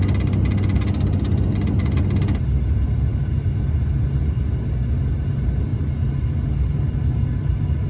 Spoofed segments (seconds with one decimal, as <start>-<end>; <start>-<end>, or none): none